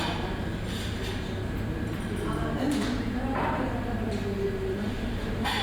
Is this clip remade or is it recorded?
remade